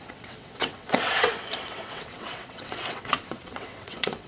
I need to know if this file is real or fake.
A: fake